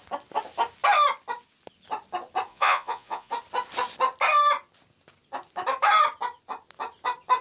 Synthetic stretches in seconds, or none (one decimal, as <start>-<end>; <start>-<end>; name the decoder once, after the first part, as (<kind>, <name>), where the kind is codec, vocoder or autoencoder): 2.5-3.3 (vocoder, Vocos)